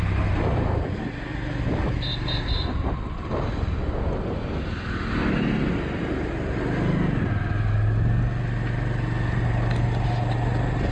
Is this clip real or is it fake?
real